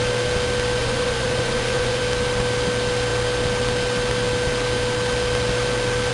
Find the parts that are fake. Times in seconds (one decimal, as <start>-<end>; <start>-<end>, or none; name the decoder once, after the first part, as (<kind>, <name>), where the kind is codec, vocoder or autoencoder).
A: 0.8-2.0 (vocoder, Vocos)